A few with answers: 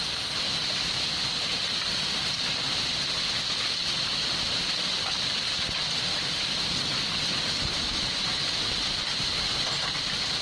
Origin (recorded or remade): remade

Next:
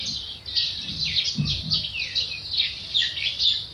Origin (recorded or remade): recorded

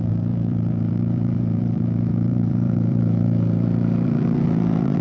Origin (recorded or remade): remade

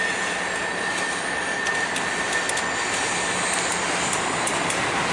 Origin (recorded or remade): recorded